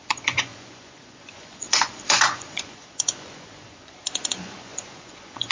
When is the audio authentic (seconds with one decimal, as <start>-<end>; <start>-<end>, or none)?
none